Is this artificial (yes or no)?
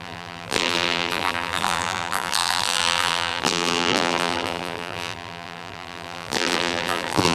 yes